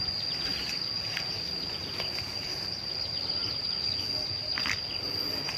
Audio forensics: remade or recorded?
recorded